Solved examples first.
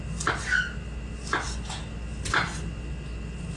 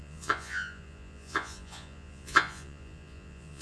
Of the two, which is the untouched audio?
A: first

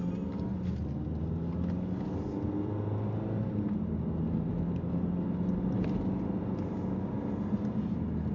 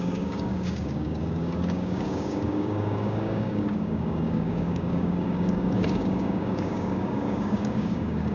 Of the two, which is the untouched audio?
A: first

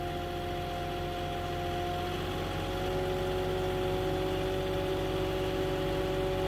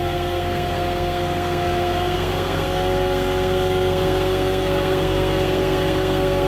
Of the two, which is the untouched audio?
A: first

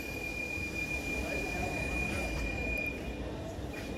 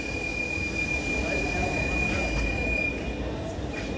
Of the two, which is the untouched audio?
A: second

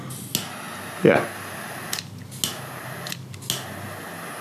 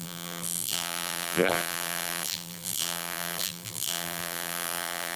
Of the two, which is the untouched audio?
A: first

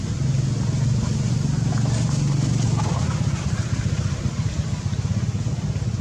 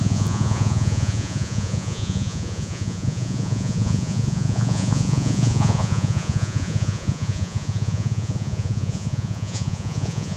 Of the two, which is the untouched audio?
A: first